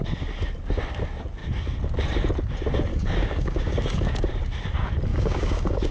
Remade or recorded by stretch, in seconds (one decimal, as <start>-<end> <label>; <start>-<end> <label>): 0.0-2.9 recorded; 2.9-4.3 remade; 4.3-5.1 recorded; 5.1-5.9 remade

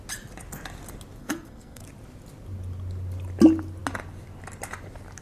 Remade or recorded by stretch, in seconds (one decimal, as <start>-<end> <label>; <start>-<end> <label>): 0.0-1.2 recorded; 1.2-1.8 remade; 1.8-5.2 recorded